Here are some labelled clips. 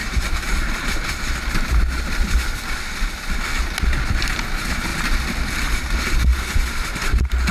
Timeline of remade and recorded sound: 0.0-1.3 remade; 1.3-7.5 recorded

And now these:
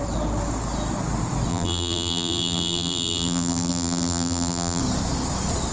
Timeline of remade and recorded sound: 0.0-1.5 recorded; 1.5-4.8 remade; 4.8-5.7 recorded